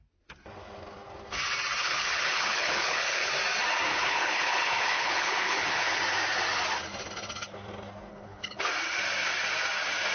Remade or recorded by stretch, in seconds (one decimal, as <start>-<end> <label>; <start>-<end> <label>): 0.0-1.8 recorded; 1.8-3.3 remade; 3.3-3.9 recorded; 3.9-6.0 remade; 6.0-8.1 recorded; 8.1-8.7 remade; 8.7-10.1 recorded